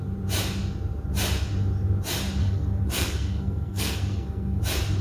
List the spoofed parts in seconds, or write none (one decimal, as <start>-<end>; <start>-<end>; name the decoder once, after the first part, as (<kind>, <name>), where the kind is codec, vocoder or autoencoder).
2.4-4.6 (codec, SNAC)